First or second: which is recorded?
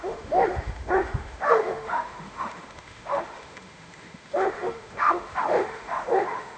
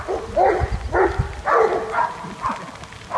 second